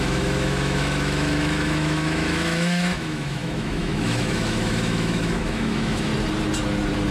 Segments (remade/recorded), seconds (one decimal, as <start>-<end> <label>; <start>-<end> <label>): 0.0-6.1 remade; 6.1-7.1 recorded